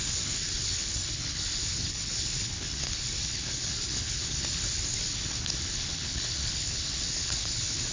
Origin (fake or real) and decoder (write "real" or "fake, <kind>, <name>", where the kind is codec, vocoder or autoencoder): fake, codec, HILCodec